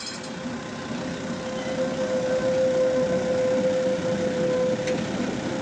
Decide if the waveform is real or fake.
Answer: real